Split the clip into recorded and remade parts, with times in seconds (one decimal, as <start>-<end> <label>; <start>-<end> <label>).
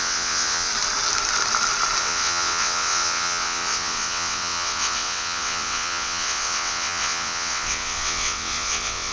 0.0-0.7 remade; 0.7-2.0 recorded; 2.0-9.1 remade